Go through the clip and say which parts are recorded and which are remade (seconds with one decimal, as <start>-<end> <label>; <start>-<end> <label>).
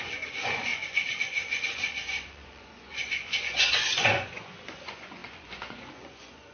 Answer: 0.0-6.5 remade